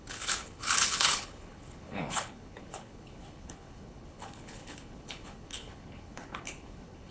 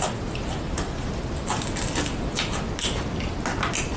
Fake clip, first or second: first